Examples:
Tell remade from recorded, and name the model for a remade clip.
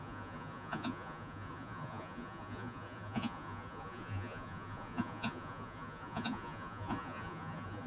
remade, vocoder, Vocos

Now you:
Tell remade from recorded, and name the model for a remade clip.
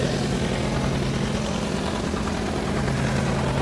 recorded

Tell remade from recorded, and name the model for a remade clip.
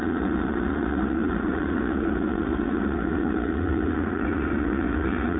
remade, vocoder, Vocos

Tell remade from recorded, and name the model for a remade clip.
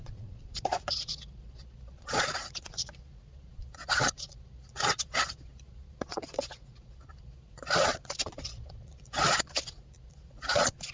remade, vocoder, Vocos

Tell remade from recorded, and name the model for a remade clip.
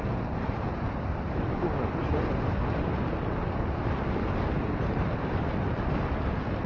recorded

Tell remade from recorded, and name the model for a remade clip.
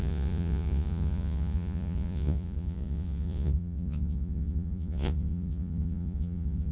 remade, vocoder, Vocos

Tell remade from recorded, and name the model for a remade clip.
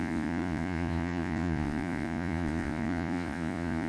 remade, vocoder, Vocos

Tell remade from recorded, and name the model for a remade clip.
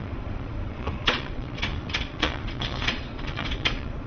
remade, vocoder, Vocos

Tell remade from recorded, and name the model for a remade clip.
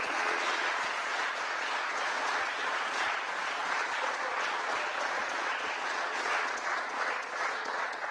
remade, vocoder, Vocos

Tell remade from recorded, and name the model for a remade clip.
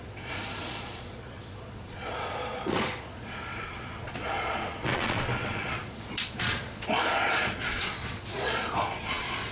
remade, vocoder, Vocos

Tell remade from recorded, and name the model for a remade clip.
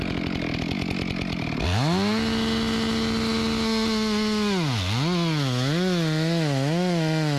recorded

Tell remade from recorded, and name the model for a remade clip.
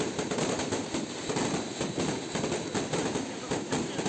recorded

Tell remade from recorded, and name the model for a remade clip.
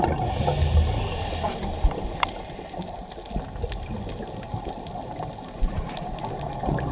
recorded